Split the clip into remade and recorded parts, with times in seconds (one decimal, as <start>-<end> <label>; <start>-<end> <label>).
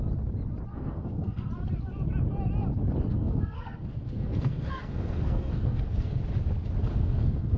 0.0-0.7 recorded; 0.7-1.5 remade; 1.5-3.1 recorded; 3.1-6.2 remade; 6.2-6.9 recorded; 6.9-7.6 remade